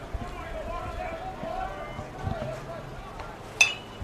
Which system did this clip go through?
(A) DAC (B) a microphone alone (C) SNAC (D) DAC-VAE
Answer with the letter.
B